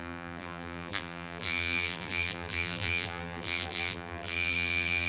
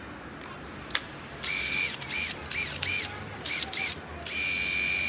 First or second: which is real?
second